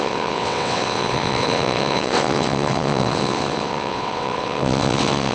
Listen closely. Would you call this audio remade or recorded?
remade